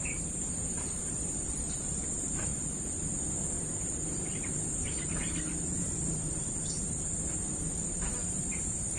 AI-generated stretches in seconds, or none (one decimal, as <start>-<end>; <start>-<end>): 0.0-2.5; 4.3-9.0